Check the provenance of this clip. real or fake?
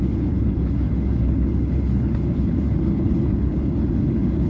fake